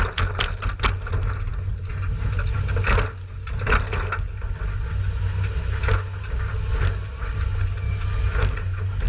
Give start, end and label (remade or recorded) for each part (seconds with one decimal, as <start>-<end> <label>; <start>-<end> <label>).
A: 0.0-9.1 recorded